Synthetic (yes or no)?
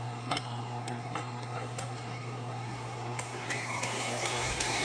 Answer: yes